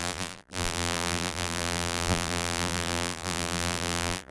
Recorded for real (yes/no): no